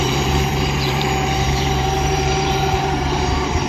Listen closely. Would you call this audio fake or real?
fake